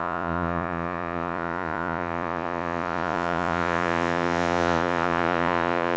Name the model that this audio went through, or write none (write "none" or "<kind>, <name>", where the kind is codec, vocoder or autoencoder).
vocoder, Vocos